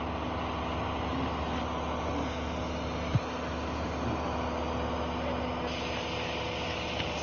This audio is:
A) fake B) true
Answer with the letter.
B